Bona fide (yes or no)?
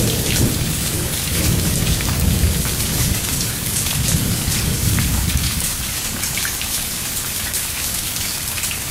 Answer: no